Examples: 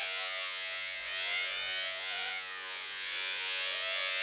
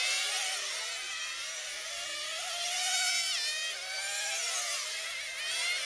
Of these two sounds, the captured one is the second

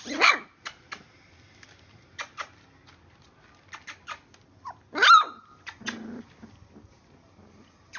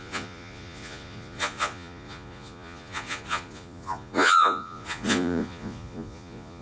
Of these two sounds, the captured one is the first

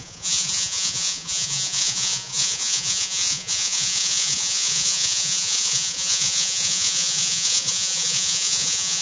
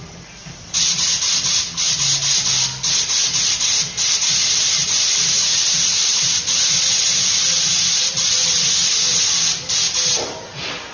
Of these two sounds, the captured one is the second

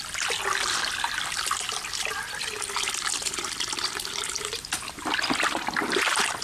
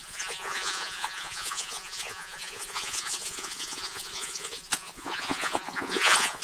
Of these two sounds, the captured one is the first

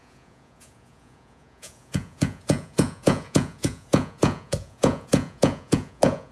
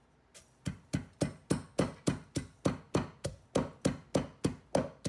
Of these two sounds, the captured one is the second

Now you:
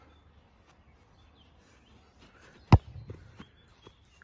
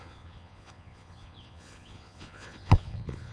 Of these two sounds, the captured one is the first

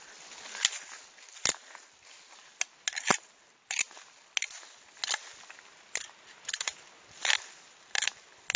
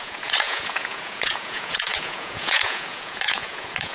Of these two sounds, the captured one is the first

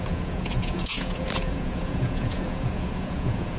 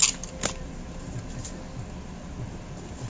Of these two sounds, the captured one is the second